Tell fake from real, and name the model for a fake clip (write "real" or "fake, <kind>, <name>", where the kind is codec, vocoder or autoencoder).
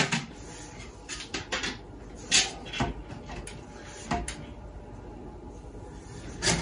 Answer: real